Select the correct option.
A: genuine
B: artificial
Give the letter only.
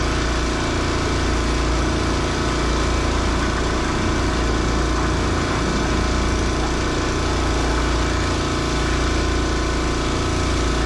A